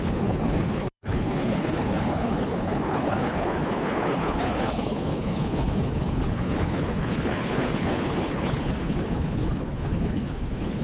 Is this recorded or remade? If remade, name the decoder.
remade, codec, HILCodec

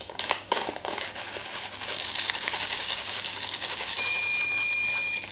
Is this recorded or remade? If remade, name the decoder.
remade, codec, DAC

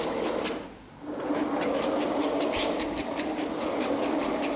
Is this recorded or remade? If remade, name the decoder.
recorded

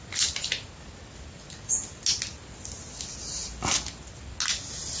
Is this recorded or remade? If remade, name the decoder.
recorded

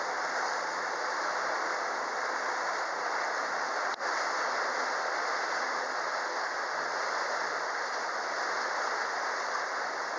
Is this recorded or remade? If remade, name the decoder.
recorded